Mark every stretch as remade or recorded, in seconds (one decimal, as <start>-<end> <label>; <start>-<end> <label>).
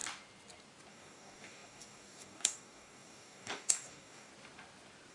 0.0-0.9 recorded; 0.9-4.3 remade; 4.3-5.1 recorded